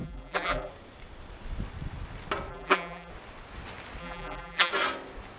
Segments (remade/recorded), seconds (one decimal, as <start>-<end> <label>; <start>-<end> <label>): 0.0-0.7 remade; 0.7-2.5 recorded; 2.5-3.1 remade; 3.1-4.0 recorded; 4.0-4.7 remade; 4.7-5.4 recorded